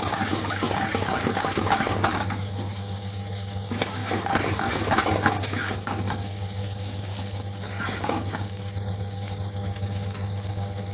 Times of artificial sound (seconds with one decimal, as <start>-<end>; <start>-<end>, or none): 0.0-10.9

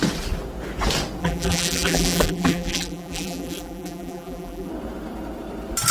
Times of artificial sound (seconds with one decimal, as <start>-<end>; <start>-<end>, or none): 1.2-4.7

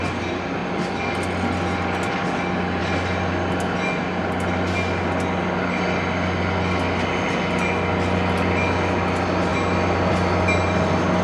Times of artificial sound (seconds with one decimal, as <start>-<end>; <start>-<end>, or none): none

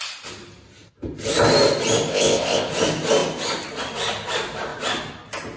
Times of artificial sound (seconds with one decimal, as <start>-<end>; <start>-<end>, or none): 2.1-2.7